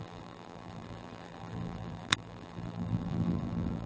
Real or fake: fake